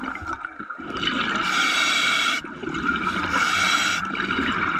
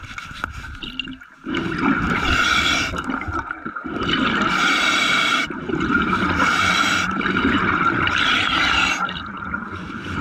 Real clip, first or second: first